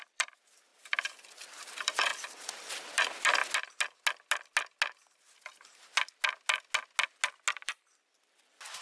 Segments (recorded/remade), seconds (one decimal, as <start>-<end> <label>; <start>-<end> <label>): 0.0-2.1 remade; 2.1-2.7 recorded; 2.7-3.4 remade; 3.4-7.5 recorded; 7.5-8.8 remade